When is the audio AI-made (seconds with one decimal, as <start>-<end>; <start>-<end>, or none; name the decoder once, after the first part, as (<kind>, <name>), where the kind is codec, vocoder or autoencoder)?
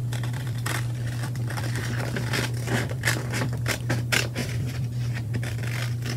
0.0-3.7 (vocoder, BigVGAN v2); 4.4-5.6